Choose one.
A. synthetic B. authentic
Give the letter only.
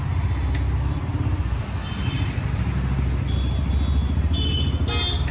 B